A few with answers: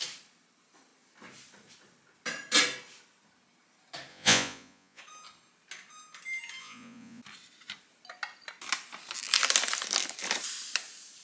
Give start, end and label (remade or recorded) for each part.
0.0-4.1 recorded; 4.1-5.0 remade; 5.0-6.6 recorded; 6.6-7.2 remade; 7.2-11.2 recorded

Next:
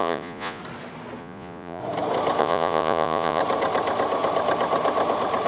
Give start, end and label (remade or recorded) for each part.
0.0-0.6 remade; 0.6-1.2 recorded; 1.2-1.8 remade; 1.8-2.4 recorded; 2.4-3.4 remade; 3.4-5.5 recorded

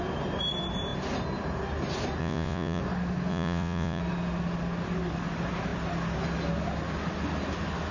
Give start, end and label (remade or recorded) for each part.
0.0-2.2 recorded; 2.2-2.8 remade; 2.8-3.3 recorded; 3.3-4.0 remade; 4.0-7.9 recorded

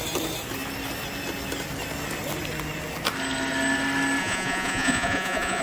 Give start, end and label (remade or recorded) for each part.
0.0-4.2 recorded; 4.2-5.6 remade